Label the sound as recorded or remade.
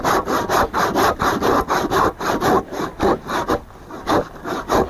recorded